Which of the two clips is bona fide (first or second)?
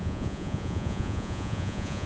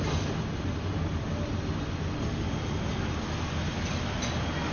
second